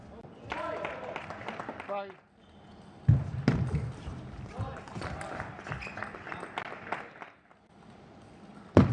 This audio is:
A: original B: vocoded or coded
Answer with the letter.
A